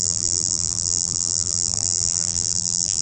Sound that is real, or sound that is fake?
fake